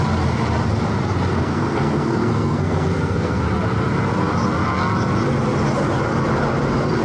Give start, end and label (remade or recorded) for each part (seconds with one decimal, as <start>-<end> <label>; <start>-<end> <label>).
0.0-1.3 recorded; 1.3-3.4 remade; 3.4-7.0 recorded